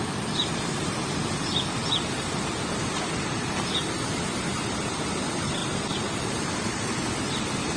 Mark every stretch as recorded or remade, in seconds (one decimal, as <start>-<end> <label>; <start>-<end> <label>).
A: 0.0-7.8 recorded